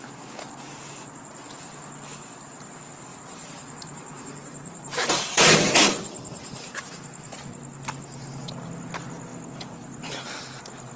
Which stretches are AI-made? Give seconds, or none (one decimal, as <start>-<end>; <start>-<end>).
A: 3.1-6.8